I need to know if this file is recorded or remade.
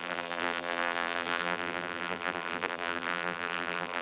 remade